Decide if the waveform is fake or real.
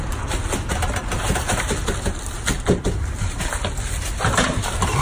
real